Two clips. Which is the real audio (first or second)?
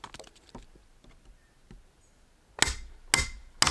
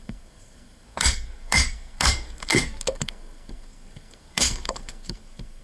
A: first